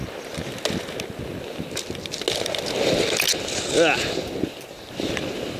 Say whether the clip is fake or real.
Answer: real